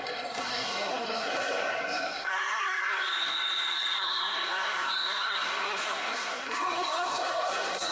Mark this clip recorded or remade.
remade